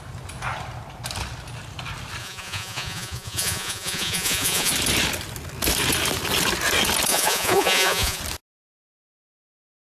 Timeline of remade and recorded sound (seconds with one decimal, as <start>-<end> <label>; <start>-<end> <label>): 0.0-2.2 recorded; 2.2-4.7 remade; 4.7-7.1 recorded; 7.1-8.2 remade; 8.2-9.8 recorded